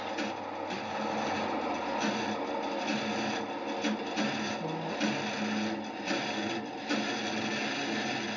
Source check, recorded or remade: recorded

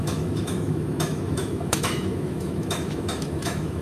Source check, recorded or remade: remade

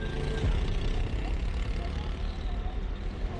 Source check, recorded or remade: recorded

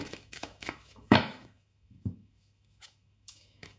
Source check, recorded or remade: remade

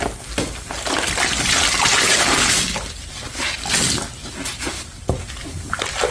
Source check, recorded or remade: recorded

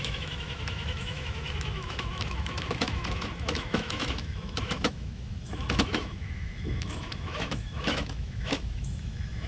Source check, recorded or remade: remade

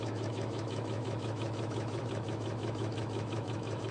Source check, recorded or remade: remade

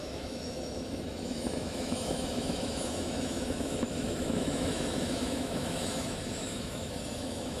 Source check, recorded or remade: remade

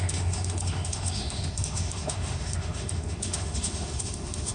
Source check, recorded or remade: remade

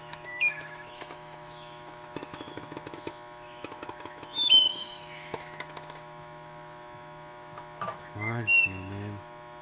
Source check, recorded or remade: remade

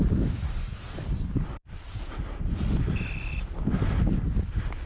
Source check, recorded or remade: recorded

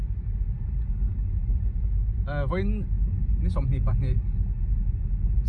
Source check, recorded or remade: recorded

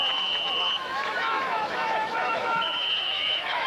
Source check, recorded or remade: remade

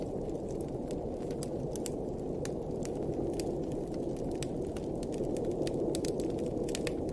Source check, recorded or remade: recorded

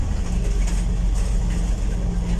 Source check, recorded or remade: recorded